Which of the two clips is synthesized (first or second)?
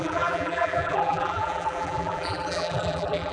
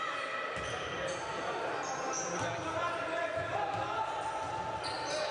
first